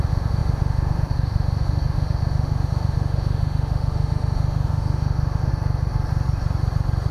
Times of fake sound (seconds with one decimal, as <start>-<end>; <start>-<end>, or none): 0.0-5.5